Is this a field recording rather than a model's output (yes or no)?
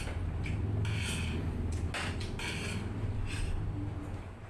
yes